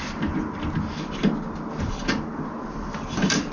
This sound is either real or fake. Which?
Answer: real